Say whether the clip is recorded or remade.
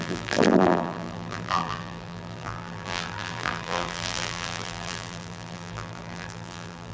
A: remade